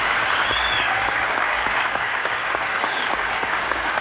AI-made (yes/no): yes